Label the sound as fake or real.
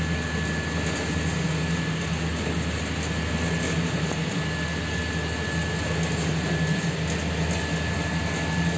real